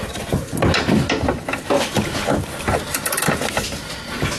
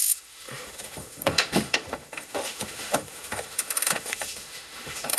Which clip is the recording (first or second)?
first